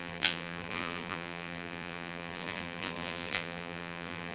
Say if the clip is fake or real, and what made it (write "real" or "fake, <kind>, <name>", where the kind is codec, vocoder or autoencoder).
fake, vocoder, BigVGAN v2